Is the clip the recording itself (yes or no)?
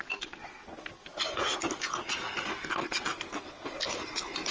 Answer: yes